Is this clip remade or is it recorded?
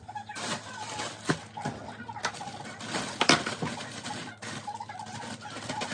recorded